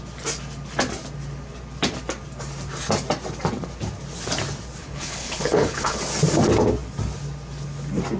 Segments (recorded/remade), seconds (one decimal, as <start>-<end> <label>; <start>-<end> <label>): 0.0-4.8 recorded; 4.8-6.0 remade; 6.0-8.2 recorded

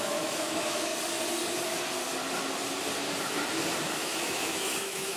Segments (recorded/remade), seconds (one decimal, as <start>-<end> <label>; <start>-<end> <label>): 0.0-0.9 remade; 0.9-3.9 recorded; 3.9-5.2 remade

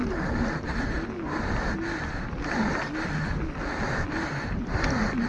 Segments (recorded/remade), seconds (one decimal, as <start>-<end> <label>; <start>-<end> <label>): 0.0-5.3 recorded

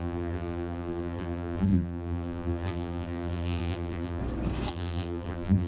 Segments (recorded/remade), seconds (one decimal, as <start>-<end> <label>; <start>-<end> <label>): 0.0-4.2 remade; 4.2-4.7 recorded; 4.7-5.7 remade

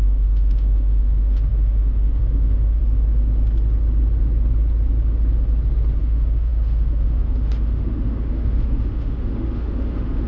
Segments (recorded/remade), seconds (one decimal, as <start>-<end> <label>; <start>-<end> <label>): 0.0-2.8 remade; 2.8-6.0 recorded; 6.0-10.3 remade